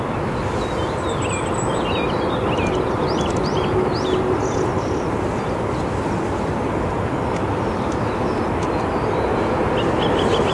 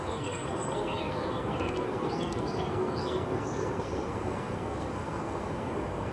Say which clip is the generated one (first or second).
second